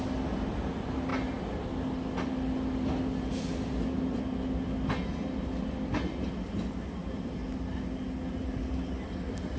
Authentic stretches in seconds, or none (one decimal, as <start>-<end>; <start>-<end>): 0.0-9.6